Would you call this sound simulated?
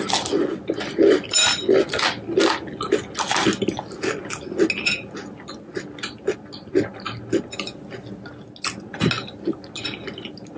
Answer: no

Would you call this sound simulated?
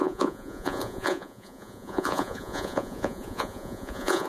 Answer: yes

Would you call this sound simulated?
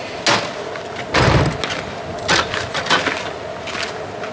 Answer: no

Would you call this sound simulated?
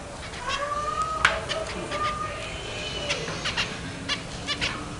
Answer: no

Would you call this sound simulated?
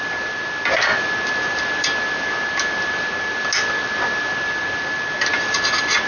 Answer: no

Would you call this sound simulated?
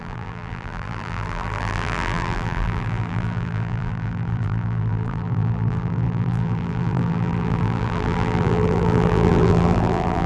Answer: yes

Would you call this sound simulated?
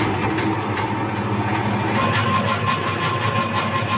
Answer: no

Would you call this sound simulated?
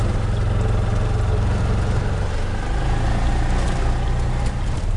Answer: no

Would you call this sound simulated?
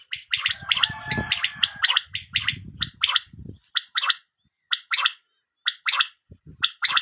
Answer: no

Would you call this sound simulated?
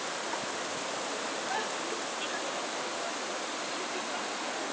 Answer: no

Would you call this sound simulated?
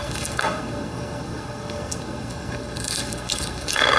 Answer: yes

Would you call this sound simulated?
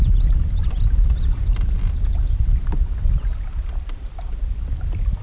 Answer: yes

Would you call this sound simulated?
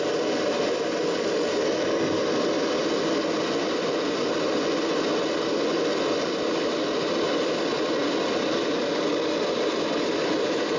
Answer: no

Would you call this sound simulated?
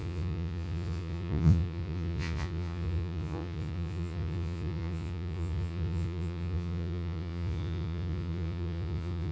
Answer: yes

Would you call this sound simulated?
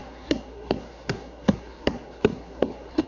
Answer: yes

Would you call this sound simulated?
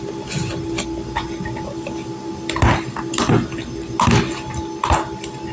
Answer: no